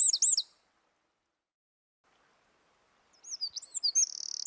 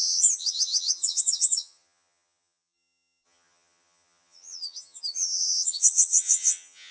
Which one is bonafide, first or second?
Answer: first